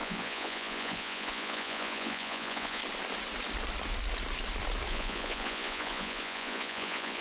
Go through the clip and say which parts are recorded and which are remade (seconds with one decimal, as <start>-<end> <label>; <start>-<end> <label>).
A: 0.0-2.8 remade; 2.8-4.9 recorded; 4.9-7.2 remade